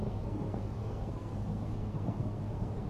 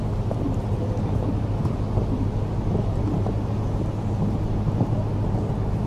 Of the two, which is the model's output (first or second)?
first